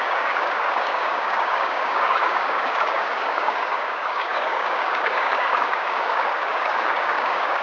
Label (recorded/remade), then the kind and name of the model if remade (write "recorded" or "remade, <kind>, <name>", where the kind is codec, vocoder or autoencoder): remade, codec, DAC